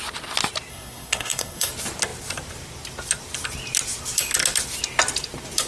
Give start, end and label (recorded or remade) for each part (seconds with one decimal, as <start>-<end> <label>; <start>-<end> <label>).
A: 0.0-0.7 recorded; 0.7-1.7 remade; 1.7-5.7 recorded